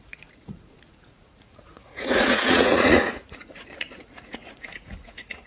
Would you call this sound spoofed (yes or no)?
yes